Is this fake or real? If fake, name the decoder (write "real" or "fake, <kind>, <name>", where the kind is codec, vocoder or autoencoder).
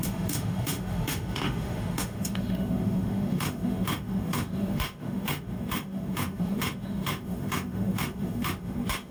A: fake, autoencoder, DAC-VAE